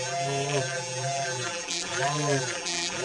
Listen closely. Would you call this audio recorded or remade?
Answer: remade